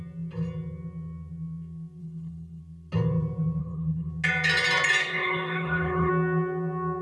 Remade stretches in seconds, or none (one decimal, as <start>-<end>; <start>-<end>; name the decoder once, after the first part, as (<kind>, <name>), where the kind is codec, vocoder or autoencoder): 2.0-2.6 (codec, HILCodec); 3.6-4.1; 5.0-6.1